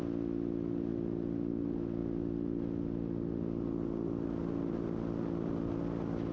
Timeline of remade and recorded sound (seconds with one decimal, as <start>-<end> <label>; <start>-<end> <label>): 0.0-6.3 recorded

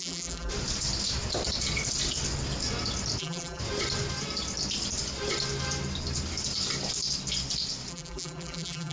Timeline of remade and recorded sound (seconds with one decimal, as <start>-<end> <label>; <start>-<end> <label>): 0.0-0.5 remade; 0.5-3.2 recorded; 3.2-3.6 remade; 3.6-7.9 recorded; 7.9-8.9 remade